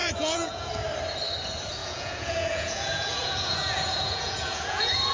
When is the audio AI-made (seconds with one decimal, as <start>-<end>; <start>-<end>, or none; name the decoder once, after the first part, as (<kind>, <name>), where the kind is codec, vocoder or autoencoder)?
0.0-0.7 (vocoder, Vocos); 1.8-5.1